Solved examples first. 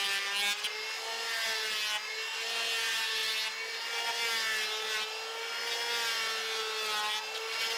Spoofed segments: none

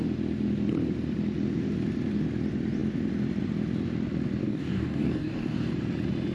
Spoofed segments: 4.4-5.7 (codec, DAC)

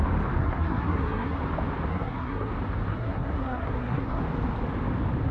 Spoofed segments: 0.4-1.4 (codec, SNAC); 1.9-2.5; 2.9-4.2

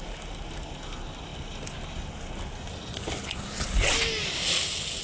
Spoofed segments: none

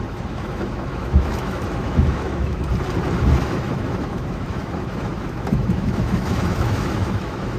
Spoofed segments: 0.0-2.7 (autoencoder, DAC-VAE); 3.4-7.6

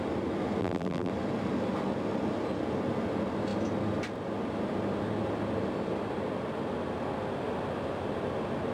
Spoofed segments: 0.6-1.1 (vocoder, BigVGAN v2)

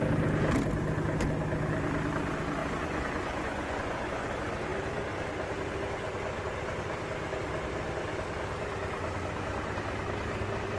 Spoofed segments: 2.6-4.3 (vocoder, Vocos)